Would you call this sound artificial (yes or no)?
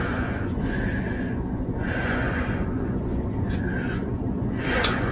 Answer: yes